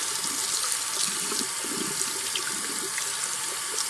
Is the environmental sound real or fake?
real